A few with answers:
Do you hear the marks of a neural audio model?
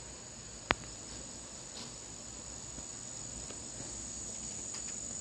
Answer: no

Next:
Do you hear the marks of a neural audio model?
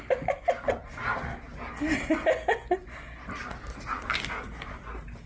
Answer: no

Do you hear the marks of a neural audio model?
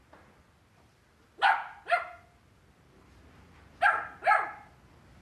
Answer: no